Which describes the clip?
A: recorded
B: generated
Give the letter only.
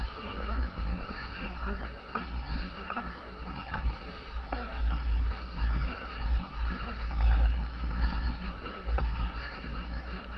B